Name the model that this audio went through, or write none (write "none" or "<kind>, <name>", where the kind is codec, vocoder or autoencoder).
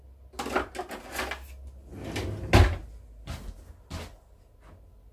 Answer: none